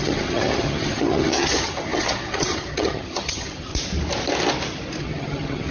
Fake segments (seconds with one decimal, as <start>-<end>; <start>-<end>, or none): 0.0-3.7; 5.0-5.7